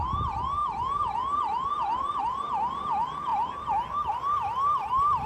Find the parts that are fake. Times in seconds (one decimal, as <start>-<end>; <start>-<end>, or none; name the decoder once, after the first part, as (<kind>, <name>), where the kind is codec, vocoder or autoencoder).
3.3-4.1 (vocoder, BigVGAN v2)